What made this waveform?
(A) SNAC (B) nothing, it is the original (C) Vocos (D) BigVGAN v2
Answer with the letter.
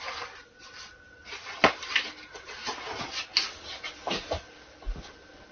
B